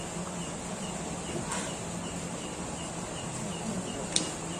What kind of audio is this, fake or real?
real